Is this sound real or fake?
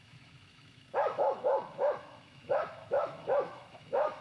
fake